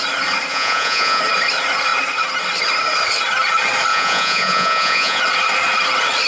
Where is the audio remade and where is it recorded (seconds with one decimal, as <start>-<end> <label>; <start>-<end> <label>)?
0.0-0.5 recorded; 0.5-1.2 remade; 1.2-3.9 recorded; 3.9-5.2 remade; 5.2-6.3 recorded